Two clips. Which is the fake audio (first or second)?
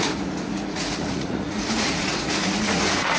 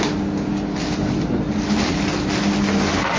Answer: first